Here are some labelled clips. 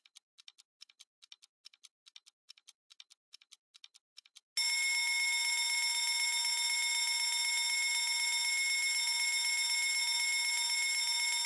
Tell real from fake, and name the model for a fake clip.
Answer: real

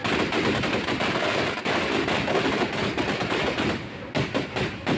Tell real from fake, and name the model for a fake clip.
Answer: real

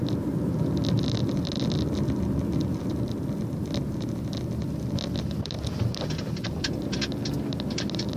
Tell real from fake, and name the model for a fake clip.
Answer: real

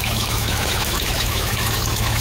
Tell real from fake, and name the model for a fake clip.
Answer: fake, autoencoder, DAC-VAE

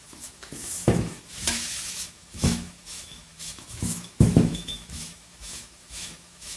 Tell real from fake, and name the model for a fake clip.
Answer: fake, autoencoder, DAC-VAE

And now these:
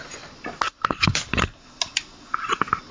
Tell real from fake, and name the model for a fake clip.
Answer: real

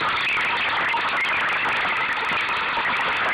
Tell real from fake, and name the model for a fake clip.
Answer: real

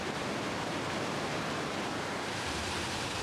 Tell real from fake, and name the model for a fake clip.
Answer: real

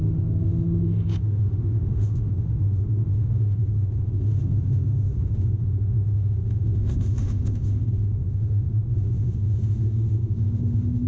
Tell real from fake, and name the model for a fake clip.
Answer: fake, autoencoder, DAC-VAE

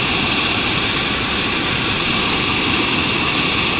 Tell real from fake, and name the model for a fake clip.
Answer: real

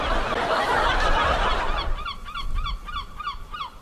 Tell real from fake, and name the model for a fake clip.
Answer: real